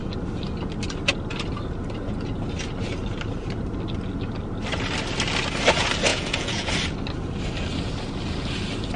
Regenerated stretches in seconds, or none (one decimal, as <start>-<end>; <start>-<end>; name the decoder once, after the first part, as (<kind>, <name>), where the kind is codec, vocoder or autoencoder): 6.1-6.7 (vocoder, Vocos)